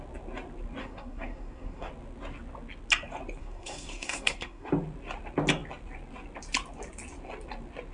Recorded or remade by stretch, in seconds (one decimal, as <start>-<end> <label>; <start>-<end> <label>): 0.0-0.8 recorded; 0.8-1.9 remade; 1.9-3.4 recorded; 3.4-4.7 remade; 4.7-7.9 recorded